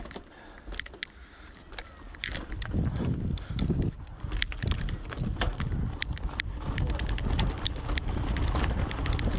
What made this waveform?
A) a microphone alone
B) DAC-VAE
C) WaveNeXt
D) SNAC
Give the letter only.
A